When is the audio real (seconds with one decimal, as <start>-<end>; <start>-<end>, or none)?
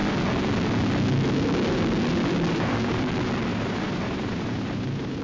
0.0-3.5